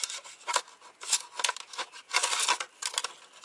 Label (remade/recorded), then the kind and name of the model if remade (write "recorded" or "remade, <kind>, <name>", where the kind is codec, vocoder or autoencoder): recorded